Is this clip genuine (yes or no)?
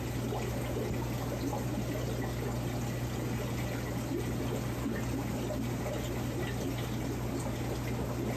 yes